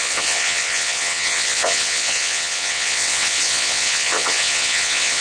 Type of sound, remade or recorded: remade